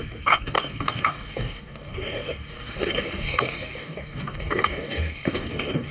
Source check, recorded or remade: remade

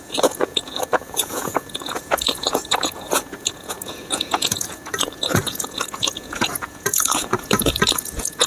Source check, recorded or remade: remade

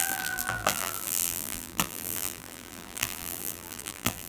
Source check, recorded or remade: remade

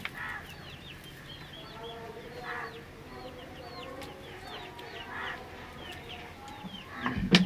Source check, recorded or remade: recorded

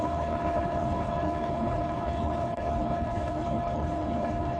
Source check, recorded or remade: remade